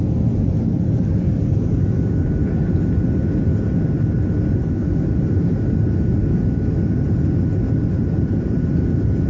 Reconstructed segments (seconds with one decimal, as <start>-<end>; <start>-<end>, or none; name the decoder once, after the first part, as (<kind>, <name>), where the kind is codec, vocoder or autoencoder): 6.2-6.8 (autoencoder, DAC-VAE)